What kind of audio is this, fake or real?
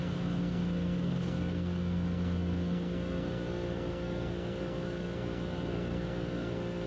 fake